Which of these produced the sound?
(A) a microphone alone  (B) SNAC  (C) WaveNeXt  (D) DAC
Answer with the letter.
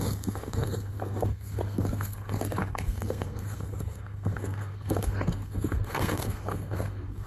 B